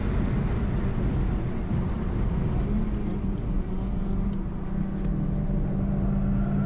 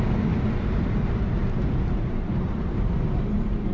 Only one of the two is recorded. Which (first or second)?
first